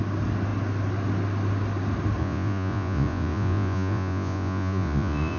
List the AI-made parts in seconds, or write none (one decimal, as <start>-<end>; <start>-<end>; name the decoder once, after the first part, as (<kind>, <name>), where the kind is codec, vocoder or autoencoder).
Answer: 2.2-5.4 (vocoder, Vocos)